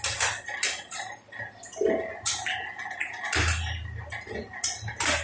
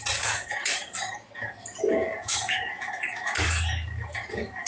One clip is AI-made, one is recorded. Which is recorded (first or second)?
first